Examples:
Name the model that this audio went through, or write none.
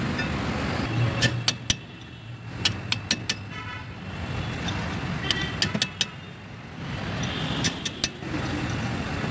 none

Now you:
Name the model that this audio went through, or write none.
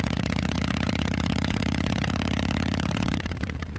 vocoder, Vocos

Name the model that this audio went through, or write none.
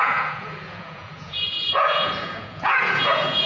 vocoder, Vocos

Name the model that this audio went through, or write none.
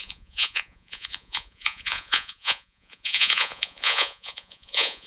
vocoder, Vocos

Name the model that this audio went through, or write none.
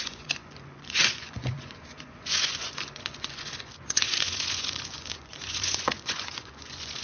vocoder, Vocos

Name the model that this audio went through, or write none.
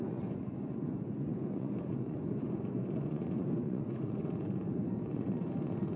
vocoder, Vocos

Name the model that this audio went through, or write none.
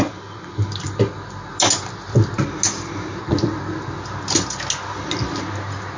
none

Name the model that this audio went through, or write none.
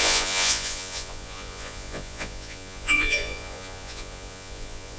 vocoder, Vocos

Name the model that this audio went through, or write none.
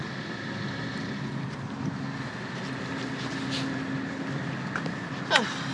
none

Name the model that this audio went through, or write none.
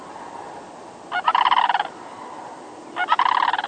none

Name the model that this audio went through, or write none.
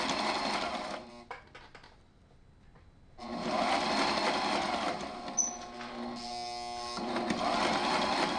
none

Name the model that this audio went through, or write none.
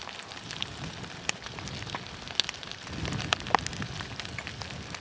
none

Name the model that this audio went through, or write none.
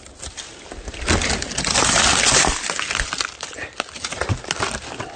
none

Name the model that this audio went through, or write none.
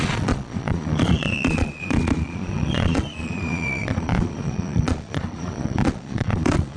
vocoder, Vocos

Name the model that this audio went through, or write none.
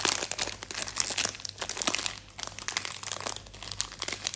none